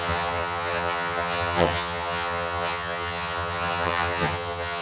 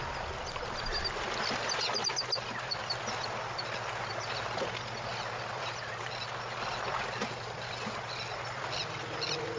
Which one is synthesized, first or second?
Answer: first